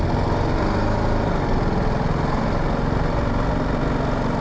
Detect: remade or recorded recorded